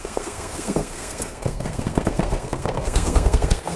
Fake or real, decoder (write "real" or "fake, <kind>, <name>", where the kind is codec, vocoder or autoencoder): fake, codec, SNAC